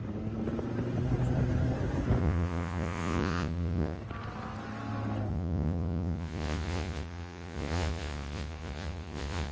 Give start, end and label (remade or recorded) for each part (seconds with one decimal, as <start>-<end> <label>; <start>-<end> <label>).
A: 0.0-2.2 recorded; 2.2-4.0 remade; 4.0-5.3 recorded; 5.3-9.5 remade